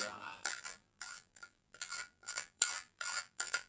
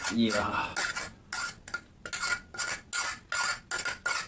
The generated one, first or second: first